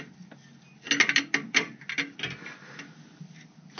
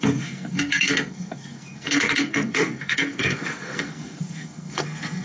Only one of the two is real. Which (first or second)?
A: first